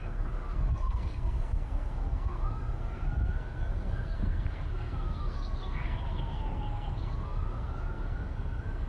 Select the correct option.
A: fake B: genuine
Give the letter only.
A